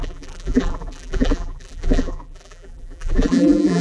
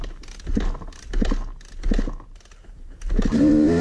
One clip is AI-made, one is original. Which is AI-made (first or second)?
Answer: first